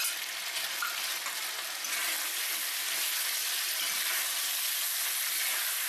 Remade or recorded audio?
recorded